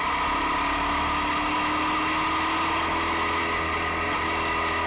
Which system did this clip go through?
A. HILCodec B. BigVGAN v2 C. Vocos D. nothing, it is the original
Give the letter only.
D